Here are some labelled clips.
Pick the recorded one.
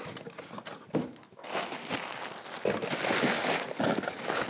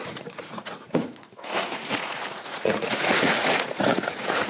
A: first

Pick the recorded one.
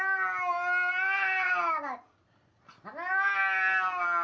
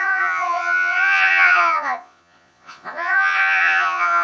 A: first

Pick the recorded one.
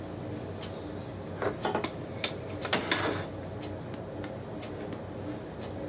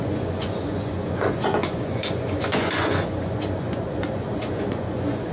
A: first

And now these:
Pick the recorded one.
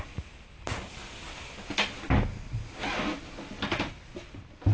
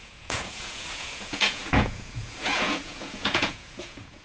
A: first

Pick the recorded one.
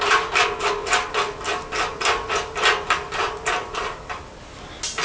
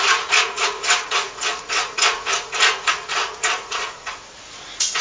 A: first